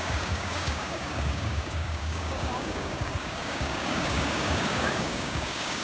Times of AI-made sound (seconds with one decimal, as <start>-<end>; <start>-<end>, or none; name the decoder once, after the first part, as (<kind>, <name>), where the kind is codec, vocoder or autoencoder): 0.0-5.8 (codec, DAC)